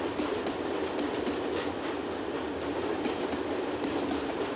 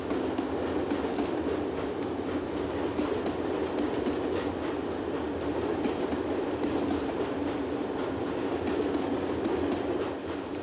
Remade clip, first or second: first